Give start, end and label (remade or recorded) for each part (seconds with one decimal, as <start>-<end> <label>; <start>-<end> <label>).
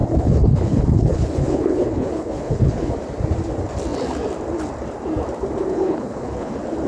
0.0-2.9 remade; 2.9-5.7 recorded; 5.7-6.5 remade; 6.5-6.9 recorded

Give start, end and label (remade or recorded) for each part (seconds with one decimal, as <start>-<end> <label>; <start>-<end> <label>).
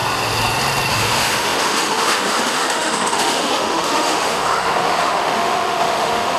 0.0-0.9 recorded; 0.9-6.4 remade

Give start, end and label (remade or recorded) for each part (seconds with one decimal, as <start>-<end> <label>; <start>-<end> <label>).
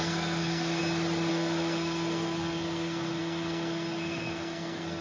0.0-0.8 remade; 0.8-1.3 recorded; 1.3-5.0 remade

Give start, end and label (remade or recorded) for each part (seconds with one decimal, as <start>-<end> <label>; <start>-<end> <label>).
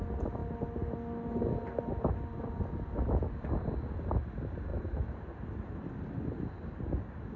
0.0-7.4 recorded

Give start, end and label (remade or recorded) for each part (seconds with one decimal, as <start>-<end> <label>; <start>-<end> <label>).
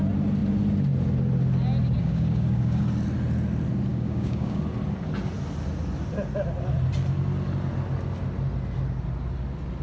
0.0-2.0 recorded; 2.0-2.8 remade; 2.8-3.9 recorded; 3.9-4.6 remade; 4.6-9.8 recorded